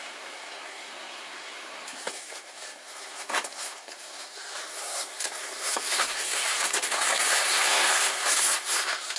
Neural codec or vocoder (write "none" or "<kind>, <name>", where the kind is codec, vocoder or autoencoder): codec, SNAC